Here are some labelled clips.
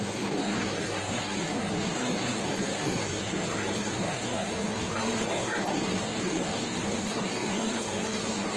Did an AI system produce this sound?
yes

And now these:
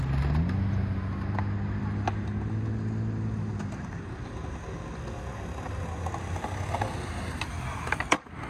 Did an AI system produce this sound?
no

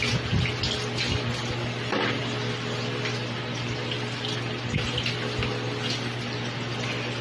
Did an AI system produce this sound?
no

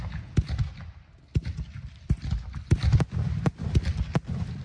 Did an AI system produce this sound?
no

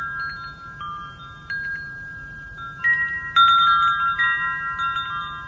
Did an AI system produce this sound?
no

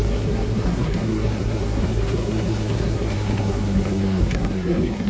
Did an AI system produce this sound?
yes